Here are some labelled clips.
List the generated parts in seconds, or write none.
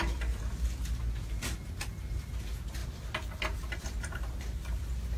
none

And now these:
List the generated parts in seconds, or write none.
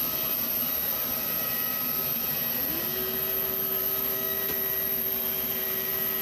3.8-4.4 (codec, DAC)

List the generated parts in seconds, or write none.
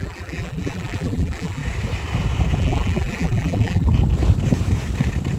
0.0-1.6 (vocoder, BigVGAN v2); 2.6-3.9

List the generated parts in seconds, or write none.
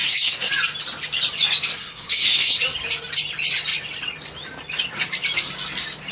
0.0-0.5 (codec, SNAC); 1.7-2.6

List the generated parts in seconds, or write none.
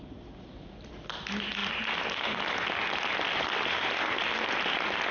none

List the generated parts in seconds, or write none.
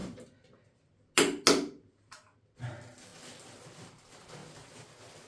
0.0-0.6 (vocoder, BigVGAN v2)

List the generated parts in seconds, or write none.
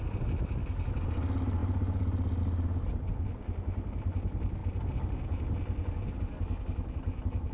none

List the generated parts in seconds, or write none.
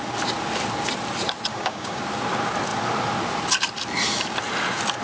1.5-2.0 (codec, DAC)